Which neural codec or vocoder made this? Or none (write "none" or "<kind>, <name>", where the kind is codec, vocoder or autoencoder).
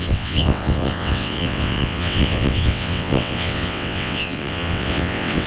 vocoder, WaveNeXt